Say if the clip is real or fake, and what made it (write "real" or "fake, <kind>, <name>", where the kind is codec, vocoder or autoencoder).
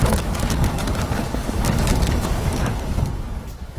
fake, codec, DAC